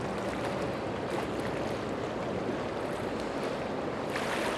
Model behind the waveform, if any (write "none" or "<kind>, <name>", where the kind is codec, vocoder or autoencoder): none